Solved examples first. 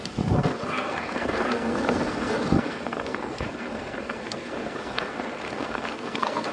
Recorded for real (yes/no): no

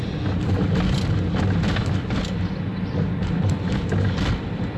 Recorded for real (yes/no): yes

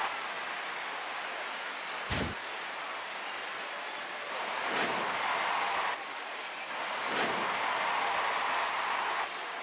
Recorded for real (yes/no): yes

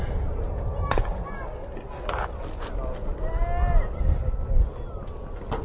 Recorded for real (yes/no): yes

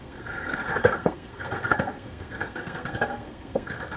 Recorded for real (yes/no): no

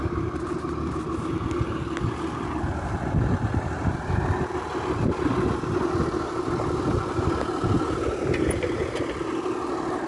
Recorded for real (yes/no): yes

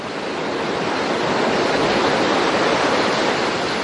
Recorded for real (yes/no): yes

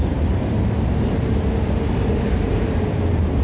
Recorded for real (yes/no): yes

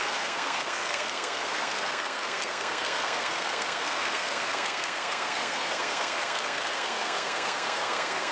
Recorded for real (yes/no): no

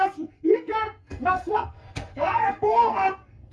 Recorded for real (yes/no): no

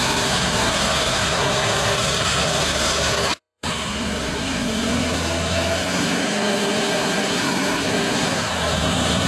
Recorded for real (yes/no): no